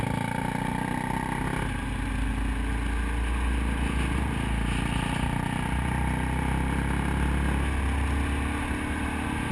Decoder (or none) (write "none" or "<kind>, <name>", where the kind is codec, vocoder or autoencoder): none